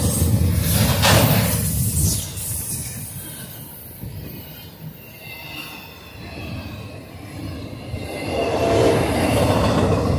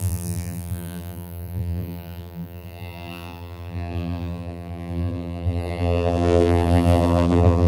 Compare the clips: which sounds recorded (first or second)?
first